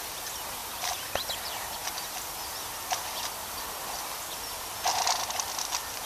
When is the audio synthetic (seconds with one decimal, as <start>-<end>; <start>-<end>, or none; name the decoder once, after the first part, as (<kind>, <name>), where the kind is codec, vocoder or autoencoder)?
none